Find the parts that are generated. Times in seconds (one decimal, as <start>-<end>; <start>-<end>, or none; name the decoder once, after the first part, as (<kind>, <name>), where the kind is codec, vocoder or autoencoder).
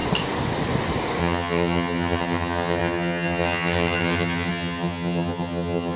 1.2-6.0 (vocoder, HiFi-GAN)